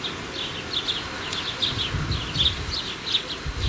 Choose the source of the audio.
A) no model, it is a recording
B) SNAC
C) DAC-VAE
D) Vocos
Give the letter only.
A